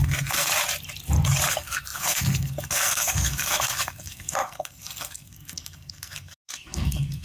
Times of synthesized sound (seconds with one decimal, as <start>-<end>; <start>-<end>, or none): 0.0-0.5; 1.5-7.2